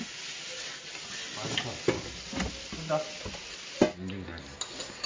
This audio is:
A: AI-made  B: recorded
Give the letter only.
B